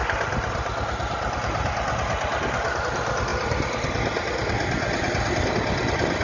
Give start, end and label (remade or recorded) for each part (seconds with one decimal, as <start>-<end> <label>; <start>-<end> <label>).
0.0-6.2 recorded